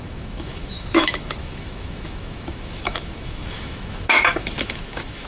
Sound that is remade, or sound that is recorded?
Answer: remade